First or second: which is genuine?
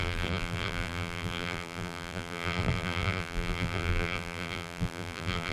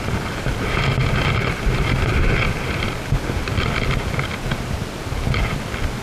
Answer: second